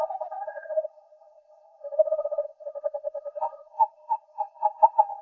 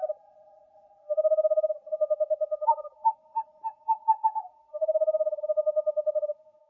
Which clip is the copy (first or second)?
first